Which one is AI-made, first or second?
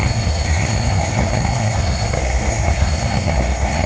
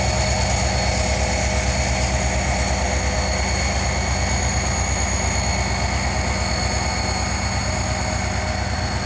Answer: first